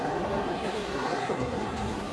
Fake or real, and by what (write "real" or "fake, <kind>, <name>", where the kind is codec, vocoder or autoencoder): fake, codec, SNAC